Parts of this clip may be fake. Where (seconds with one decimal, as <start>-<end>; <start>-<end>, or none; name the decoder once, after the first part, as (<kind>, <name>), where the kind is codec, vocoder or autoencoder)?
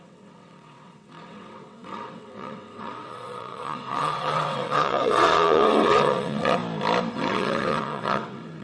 0.0-6.6 (vocoder, WaveNeXt); 7.1-8.6